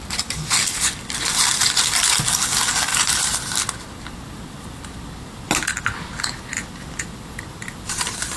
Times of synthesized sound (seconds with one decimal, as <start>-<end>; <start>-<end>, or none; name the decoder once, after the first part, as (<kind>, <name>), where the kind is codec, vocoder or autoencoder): 0.6-1.6 (vocoder, BigVGAN v2)